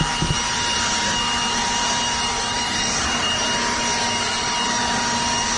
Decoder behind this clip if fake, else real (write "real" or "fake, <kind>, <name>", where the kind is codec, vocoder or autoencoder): real